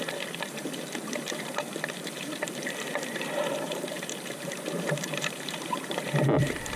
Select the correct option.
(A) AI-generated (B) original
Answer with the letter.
A